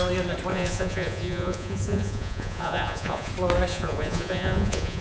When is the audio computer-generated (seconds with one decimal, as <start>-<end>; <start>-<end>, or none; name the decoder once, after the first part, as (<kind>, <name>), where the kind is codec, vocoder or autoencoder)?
0.5-3.3 (vocoder, Vocos); 3.7-5.0